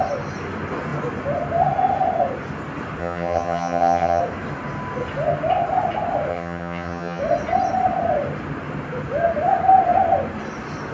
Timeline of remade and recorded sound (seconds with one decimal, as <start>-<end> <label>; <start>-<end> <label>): 0.0-3.0 recorded; 3.0-4.2 remade; 4.2-6.3 recorded; 6.3-7.2 remade; 7.2-10.9 recorded